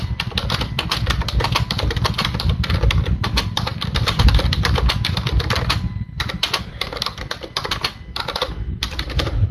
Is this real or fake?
fake